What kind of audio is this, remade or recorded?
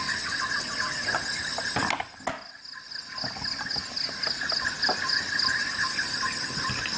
recorded